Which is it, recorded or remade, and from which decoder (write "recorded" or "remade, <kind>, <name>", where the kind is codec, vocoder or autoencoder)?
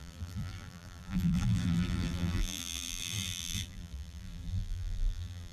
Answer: remade, vocoder, BigVGAN v2